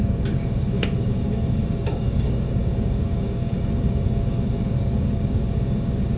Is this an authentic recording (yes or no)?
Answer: no